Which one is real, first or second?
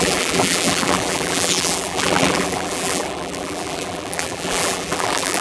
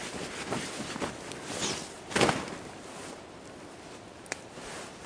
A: second